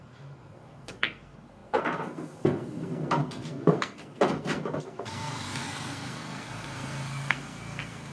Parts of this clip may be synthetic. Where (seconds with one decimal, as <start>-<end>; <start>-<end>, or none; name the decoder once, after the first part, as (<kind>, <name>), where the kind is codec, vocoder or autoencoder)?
0.0-8.1 (codec, SNAC)